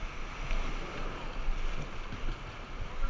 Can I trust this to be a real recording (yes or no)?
yes